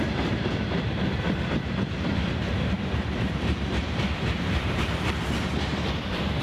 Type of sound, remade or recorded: remade